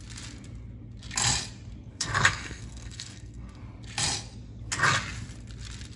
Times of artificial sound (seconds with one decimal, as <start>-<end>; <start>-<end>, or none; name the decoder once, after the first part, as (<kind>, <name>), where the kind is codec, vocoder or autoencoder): 1.9-3.6 (codec, SNAC)